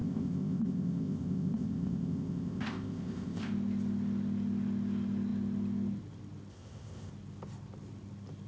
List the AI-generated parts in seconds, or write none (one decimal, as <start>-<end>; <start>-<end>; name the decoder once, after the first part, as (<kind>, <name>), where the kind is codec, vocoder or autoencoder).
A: 0.0-3.5 (codec, ZipCodec); 6.5-7.1

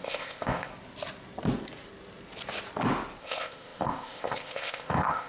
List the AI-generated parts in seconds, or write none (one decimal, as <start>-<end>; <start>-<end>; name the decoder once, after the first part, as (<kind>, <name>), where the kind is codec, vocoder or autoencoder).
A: 0.0-0.7 (codec, ZipCodec); 3.2-5.3

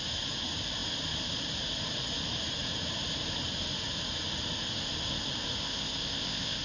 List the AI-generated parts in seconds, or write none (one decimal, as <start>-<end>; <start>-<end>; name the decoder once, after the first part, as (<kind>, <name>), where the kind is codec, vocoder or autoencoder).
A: 5.6-6.6 (codec, ZipCodec)

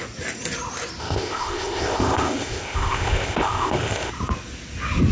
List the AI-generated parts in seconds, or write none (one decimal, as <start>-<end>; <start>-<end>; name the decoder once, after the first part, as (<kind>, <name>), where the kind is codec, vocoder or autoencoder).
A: 1.0-4.1 (codec, ZipCodec)

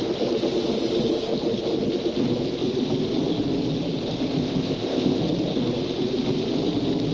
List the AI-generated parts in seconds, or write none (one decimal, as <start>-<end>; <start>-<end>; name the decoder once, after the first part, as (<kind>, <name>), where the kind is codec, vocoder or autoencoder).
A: 4.4-5.2 (codec, ZipCodec)

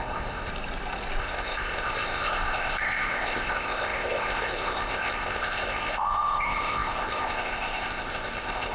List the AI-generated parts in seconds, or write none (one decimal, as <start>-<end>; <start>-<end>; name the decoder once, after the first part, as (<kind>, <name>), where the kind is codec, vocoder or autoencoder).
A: 0.0-0.5 (codec, ZipCodec); 1.2-8.7

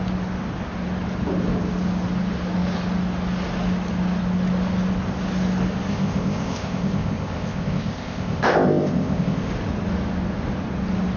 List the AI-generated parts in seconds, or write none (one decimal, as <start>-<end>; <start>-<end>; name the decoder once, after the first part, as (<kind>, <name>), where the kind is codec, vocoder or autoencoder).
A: 5.9-9.5 (codec, ZipCodec)

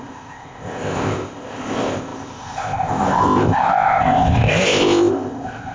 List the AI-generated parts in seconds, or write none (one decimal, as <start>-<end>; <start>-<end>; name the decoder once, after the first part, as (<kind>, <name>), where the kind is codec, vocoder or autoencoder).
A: 0.0-5.7 (codec, ZipCodec)